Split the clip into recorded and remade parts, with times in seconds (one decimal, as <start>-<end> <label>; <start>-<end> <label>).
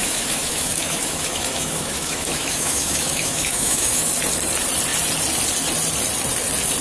0.0-4.1 remade; 4.1-6.8 recorded